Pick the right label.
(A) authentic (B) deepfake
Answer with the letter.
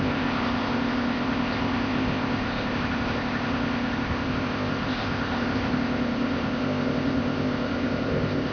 B